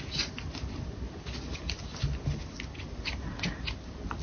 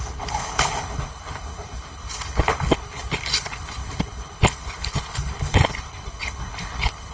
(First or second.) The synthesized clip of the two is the second